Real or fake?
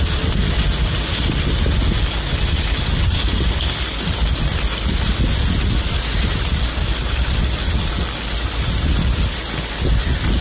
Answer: real